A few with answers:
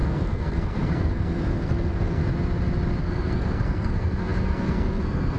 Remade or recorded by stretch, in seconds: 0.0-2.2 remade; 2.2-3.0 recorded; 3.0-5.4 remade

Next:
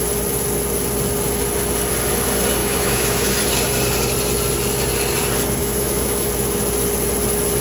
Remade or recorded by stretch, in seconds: 0.0-2.6 recorded; 2.6-3.3 remade; 3.3-5.6 recorded; 5.6-6.3 remade; 6.3-7.6 recorded

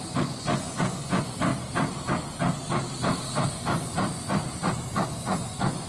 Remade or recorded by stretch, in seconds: 0.0-1.5 remade; 1.5-3.5 recorded; 3.5-4.4 remade; 4.4-4.9 recorded; 4.9-5.9 remade